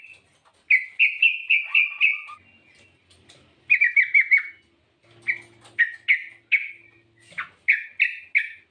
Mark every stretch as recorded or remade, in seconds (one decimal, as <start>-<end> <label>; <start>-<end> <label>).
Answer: 0.0-8.7 recorded